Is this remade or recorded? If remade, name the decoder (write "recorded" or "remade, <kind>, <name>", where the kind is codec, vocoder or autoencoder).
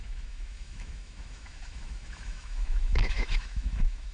remade, autoencoder, DAC-VAE